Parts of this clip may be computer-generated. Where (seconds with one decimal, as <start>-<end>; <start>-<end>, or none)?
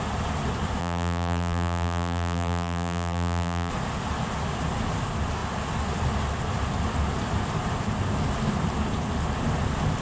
0.8-3.7